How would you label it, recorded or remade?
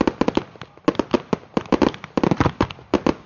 recorded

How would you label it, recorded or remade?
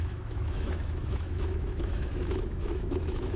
remade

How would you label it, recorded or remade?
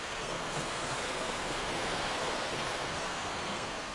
remade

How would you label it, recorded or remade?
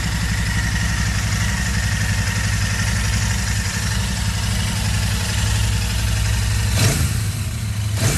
recorded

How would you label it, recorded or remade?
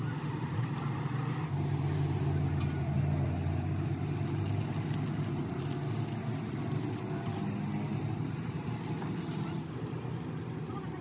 recorded